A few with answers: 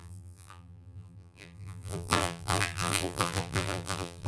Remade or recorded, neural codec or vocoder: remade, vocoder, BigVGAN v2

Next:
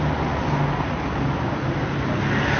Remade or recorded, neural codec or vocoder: recorded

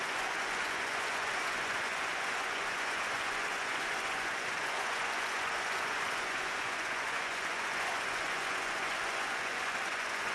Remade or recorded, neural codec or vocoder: remade, vocoder, Vocos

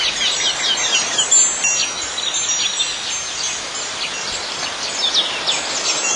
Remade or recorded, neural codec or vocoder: recorded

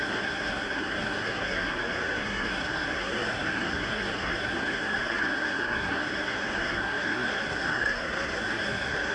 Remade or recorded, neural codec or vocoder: remade, codec, SNAC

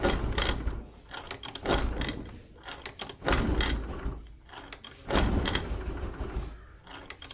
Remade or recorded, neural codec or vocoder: recorded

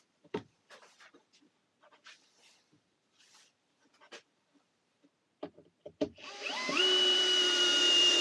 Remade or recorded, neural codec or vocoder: remade, vocoder, BigVGAN v2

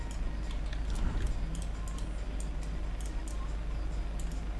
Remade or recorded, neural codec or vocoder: recorded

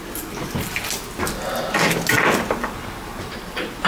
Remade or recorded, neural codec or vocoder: recorded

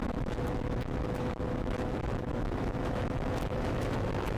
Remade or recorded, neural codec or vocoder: remade, autoencoder, DAC-VAE